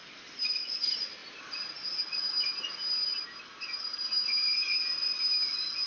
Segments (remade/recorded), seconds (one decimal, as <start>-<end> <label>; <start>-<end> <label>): 0.0-5.9 recorded